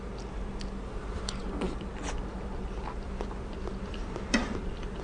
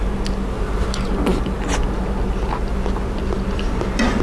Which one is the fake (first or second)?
first